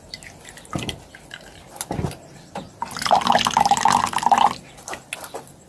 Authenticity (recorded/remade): recorded